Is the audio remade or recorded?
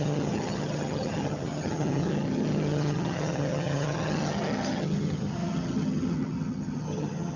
remade